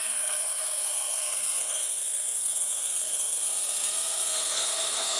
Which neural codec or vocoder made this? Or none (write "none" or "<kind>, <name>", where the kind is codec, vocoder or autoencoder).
codec, SNAC